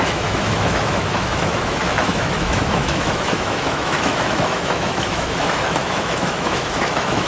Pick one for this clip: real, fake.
fake